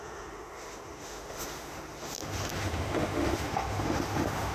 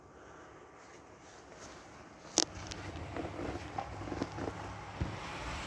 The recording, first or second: second